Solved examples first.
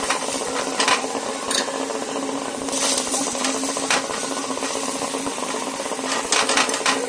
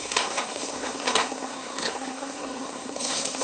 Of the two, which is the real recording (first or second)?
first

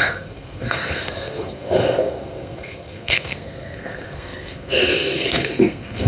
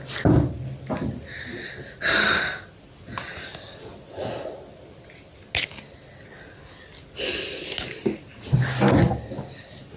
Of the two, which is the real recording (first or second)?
second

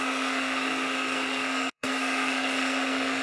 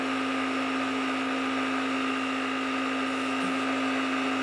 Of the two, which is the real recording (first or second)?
second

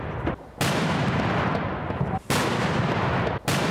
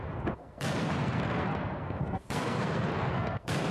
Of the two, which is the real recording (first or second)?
first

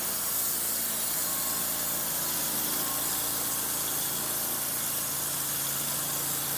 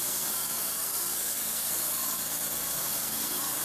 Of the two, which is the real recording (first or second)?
first